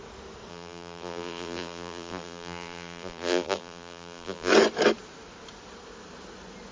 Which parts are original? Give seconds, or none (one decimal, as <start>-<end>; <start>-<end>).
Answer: 0.0-0.5; 4.5-6.7